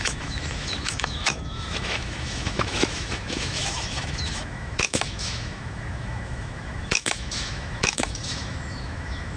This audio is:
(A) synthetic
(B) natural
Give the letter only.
A